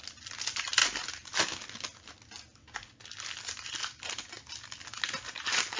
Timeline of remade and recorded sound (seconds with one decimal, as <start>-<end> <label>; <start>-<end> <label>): 0.0-5.8 recorded